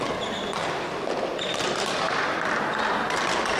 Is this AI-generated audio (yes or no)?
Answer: no